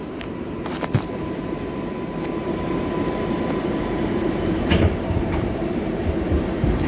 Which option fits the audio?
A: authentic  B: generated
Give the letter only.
B